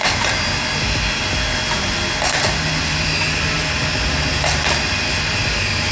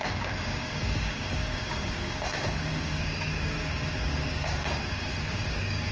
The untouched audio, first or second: first